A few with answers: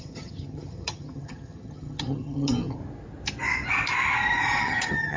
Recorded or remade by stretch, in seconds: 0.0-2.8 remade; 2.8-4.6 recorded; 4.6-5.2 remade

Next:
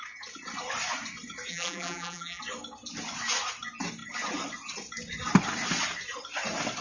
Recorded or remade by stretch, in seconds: 0.0-1.5 recorded; 1.5-2.4 remade; 2.4-6.8 recorded

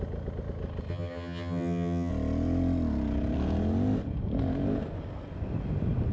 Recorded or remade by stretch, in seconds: 0.0-0.9 recorded; 0.9-2.1 remade; 2.1-6.1 recorded

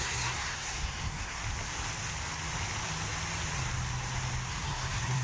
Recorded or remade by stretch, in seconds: 0.0-1.4 remade; 1.4-4.5 recorded; 4.5-5.2 remade

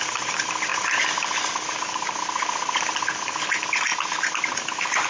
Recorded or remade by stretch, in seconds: 0.0-5.1 recorded